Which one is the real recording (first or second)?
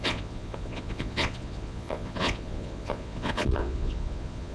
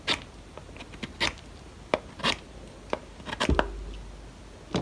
second